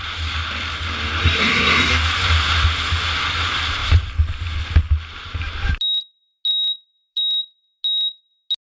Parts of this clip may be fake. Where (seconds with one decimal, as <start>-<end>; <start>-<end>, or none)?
1.2-1.9